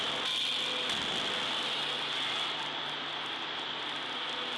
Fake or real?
real